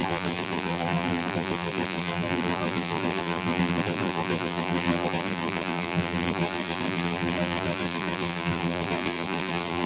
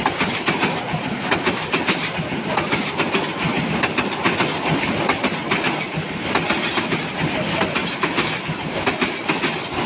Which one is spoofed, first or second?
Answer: first